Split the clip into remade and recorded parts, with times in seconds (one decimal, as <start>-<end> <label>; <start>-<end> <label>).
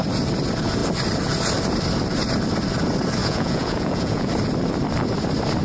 0.0-3.2 recorded; 3.2-4.3 remade; 4.3-5.6 recorded